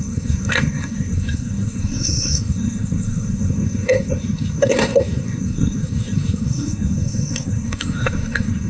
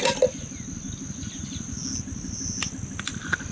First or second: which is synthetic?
first